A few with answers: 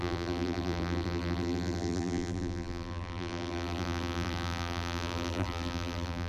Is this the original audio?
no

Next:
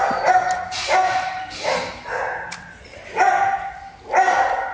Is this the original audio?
yes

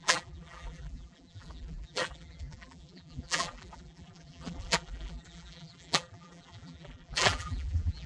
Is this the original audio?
no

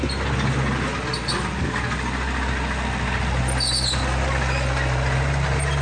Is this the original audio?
yes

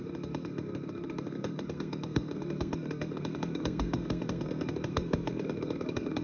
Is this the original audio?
no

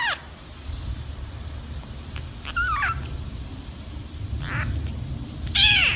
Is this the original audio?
no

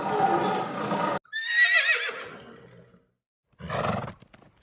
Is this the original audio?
yes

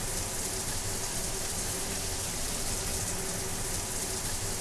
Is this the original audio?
yes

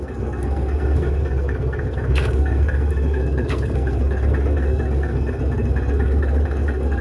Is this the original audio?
no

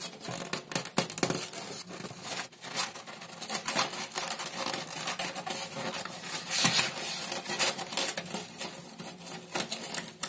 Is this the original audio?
yes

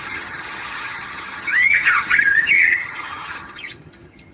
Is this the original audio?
no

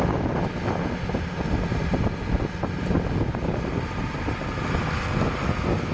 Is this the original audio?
yes